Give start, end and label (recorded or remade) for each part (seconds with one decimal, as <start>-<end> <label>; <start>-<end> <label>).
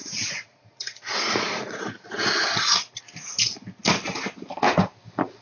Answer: 0.0-1.8 remade; 1.8-5.4 recorded